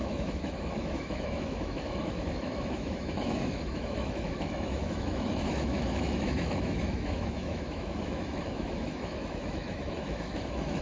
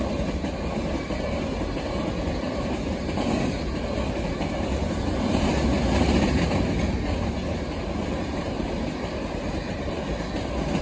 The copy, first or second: first